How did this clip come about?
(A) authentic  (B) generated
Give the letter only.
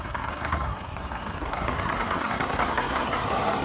B